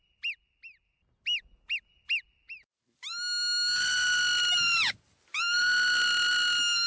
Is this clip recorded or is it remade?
recorded